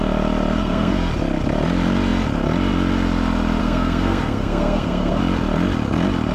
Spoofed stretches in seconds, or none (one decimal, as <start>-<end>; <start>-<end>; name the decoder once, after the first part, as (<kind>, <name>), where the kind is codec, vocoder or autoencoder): 0.6-1.1 (codec, SNAC); 3.6-5.2